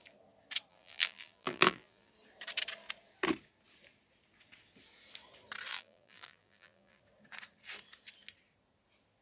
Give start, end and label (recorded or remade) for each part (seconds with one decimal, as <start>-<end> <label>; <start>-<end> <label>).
0.0-0.7 recorded; 0.7-2.1 remade; 2.1-5.7 recorded; 5.7-7.0 remade; 7.0-9.2 recorded